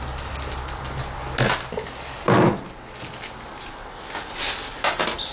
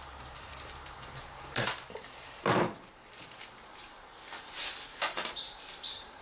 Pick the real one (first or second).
first